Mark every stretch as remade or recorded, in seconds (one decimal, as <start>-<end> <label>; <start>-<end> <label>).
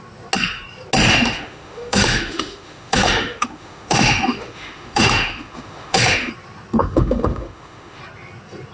0.0-1.1 recorded; 1.1-6.3 remade; 6.3-6.8 recorded; 6.8-8.0 remade; 8.0-8.7 recorded